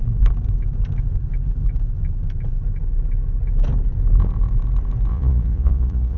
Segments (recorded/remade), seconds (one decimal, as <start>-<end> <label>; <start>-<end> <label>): 0.0-5.1 recorded; 5.1-6.2 remade